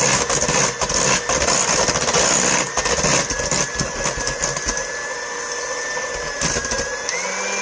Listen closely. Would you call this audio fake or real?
real